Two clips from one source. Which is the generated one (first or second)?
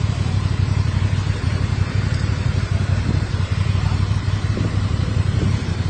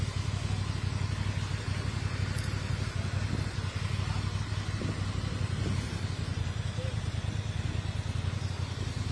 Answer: first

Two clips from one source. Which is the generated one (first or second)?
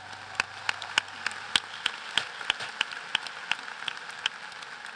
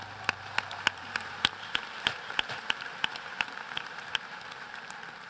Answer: second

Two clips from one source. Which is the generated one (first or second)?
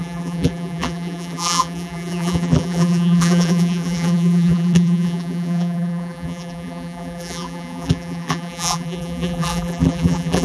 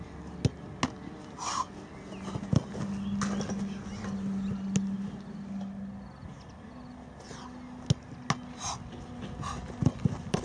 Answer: first